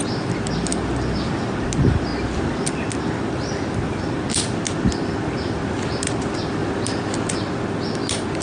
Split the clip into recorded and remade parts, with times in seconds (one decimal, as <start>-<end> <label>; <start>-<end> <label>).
0.0-8.4 recorded